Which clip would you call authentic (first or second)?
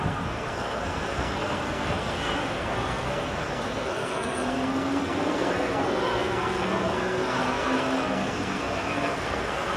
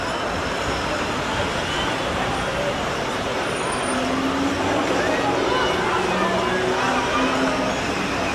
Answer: second